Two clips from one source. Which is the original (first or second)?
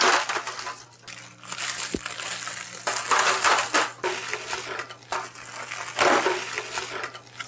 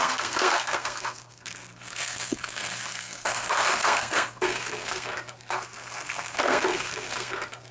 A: first